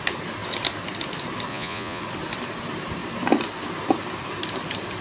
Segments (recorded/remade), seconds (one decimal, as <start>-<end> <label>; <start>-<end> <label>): 0.0-1.5 recorded; 1.5-2.0 remade; 2.0-5.0 recorded